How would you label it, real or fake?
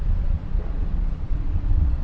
fake